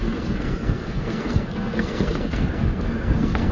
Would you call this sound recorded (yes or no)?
no